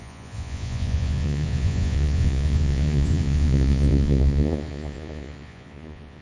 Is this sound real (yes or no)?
no